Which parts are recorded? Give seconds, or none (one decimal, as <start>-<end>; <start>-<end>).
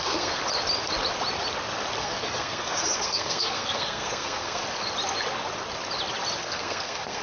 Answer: 0.4-2.0; 4.6-6.4